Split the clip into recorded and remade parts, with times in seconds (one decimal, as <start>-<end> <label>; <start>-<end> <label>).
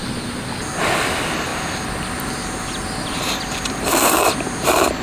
0.0-5.0 recorded